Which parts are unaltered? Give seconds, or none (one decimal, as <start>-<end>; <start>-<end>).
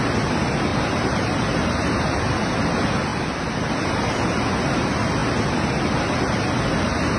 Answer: 0.0-0.7; 1.9-3.1; 3.6-7.2